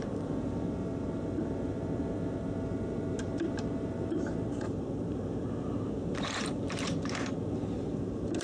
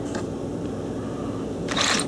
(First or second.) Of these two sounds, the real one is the second